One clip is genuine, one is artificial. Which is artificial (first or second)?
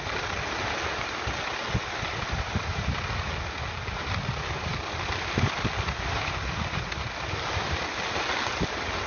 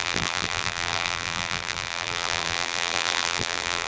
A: second